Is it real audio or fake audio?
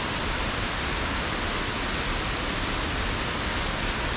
real